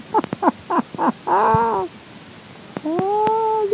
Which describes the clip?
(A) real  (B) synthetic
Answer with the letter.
A